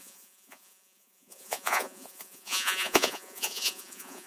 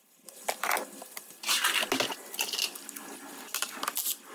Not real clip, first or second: first